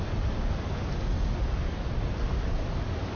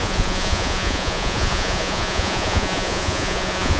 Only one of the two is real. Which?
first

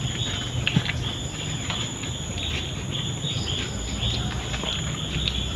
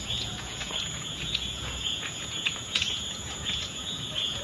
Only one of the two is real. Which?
first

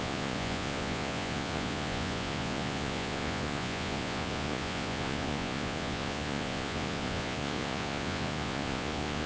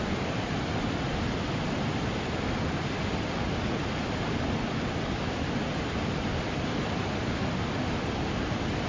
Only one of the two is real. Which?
second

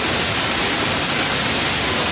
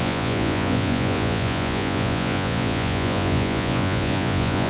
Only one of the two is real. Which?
first